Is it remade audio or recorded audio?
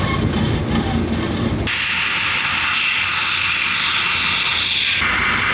recorded